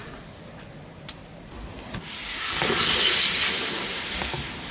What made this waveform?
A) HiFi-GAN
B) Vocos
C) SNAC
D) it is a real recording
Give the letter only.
D